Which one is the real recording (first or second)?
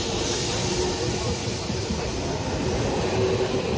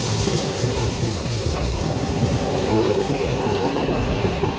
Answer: first